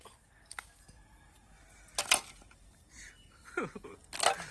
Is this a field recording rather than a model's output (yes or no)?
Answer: yes